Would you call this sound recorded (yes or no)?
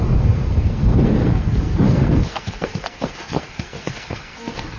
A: no